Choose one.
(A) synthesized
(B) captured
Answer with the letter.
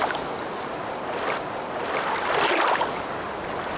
B